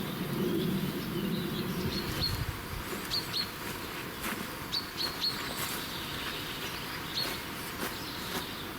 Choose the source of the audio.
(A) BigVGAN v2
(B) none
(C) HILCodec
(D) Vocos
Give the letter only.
B